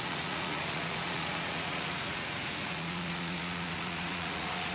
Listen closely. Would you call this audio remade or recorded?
remade